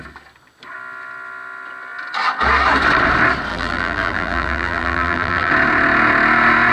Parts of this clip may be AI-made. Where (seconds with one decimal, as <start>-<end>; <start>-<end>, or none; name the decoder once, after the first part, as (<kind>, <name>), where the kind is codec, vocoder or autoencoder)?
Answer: 3.5-5.5 (vocoder, BigVGAN v2)